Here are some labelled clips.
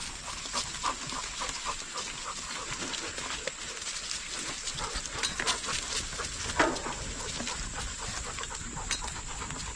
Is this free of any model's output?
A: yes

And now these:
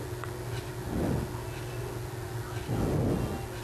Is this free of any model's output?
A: yes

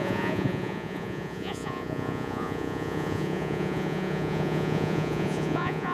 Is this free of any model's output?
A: no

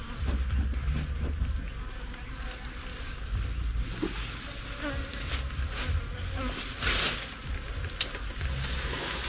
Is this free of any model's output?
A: yes